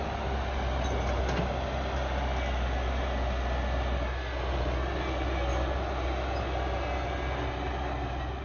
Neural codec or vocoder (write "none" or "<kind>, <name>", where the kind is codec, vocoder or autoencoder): none